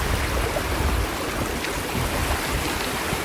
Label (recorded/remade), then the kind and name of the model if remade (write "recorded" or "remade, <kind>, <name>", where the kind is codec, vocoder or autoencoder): recorded